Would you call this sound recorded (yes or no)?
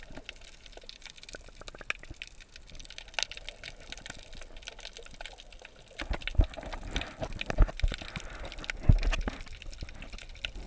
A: yes